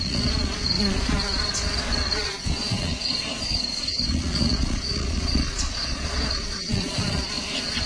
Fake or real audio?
fake